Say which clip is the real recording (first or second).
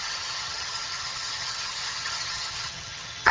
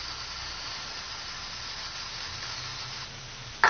second